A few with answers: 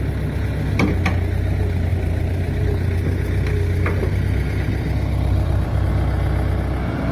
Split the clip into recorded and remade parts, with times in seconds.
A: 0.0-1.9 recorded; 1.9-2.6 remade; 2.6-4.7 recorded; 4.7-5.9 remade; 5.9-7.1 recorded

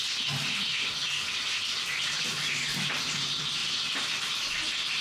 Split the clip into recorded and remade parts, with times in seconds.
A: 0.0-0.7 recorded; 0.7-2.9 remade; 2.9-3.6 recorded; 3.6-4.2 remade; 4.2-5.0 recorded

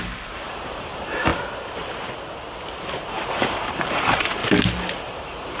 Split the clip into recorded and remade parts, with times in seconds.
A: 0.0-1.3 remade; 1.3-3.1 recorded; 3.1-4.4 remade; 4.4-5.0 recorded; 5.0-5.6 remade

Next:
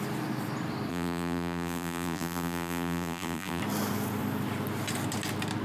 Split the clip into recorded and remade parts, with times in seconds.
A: 0.0-0.9 recorded; 0.9-3.6 remade; 3.6-5.6 recorded